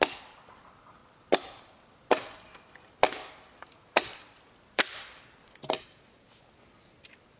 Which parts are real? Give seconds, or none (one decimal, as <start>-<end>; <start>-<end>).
0.0-3.2; 6.5-7.4